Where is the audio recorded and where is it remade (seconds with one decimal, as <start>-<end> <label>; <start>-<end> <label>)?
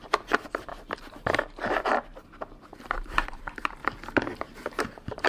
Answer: 0.0-0.7 remade; 0.7-2.7 recorded; 2.7-3.8 remade; 3.8-4.8 recorded; 4.8-5.3 remade